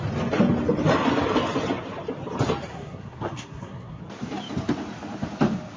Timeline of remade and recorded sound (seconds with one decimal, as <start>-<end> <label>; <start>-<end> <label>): 0.0-2.7 recorded; 2.7-4.0 remade; 4.0-5.8 recorded